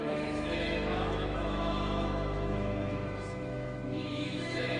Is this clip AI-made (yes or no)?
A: yes